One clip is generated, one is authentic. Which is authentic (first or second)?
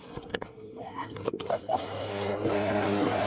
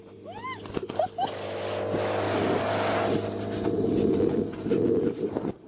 second